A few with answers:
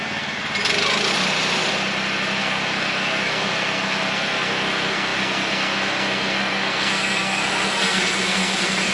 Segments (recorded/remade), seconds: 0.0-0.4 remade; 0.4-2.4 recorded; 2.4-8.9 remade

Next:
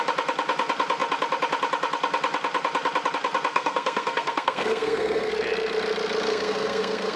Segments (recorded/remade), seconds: 0.0-3.5 recorded; 3.5-5.3 remade; 5.3-6.3 recorded; 6.3-7.2 remade

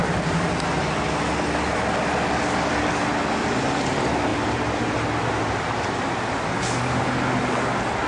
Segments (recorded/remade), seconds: 0.0-8.1 recorded

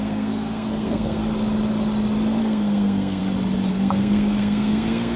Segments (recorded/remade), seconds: 0.0-1.2 remade; 1.2-2.4 recorded; 2.4-3.2 remade; 3.2-3.7 recorded; 3.7-5.2 remade

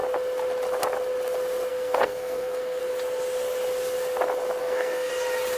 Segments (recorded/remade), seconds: 0.0-1.7 recorded; 1.7-2.8 remade; 2.8-4.6 recorded; 4.6-5.1 remade; 5.1-5.6 recorded

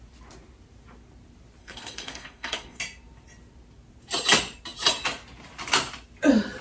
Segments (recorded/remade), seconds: 0.0-1.6 recorded; 1.6-2.8 remade; 2.8-6.6 recorded

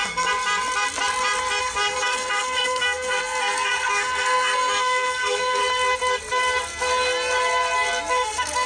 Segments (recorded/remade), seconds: 0.0-1.6 recorded; 1.6-5.6 remade; 5.6-8.1 recorded; 8.1-8.7 remade